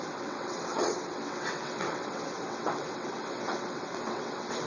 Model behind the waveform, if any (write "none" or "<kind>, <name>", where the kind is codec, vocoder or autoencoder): vocoder, WaveNeXt